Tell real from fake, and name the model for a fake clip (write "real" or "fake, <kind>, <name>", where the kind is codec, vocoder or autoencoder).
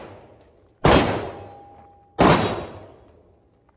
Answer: real